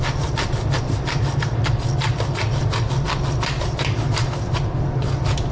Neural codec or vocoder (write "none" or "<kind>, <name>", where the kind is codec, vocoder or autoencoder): none